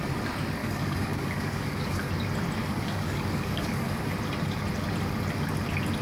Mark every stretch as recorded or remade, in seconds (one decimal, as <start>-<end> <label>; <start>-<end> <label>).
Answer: 0.0-0.6 recorded; 0.6-2.1 remade; 2.1-2.6 recorded; 2.6-4.1 remade; 4.1-6.0 recorded